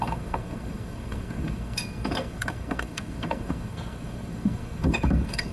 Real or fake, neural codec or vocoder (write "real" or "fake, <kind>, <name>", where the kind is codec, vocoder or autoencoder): fake, codec, SNAC